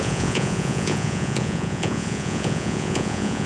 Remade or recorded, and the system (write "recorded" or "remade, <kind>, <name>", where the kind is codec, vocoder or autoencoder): remade, vocoder, Vocos